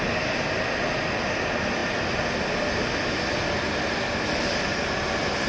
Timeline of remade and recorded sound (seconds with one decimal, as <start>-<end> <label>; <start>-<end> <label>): 0.0-5.5 recorded